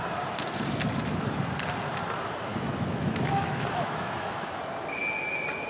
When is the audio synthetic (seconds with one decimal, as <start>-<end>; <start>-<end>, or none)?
2.5-4.6